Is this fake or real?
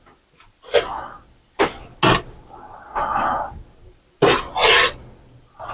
real